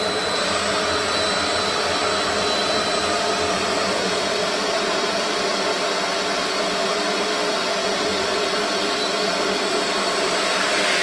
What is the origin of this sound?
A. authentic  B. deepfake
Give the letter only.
A